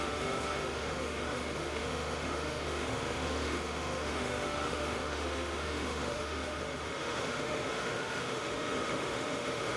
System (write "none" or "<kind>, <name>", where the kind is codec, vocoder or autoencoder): autoencoder, DAC-VAE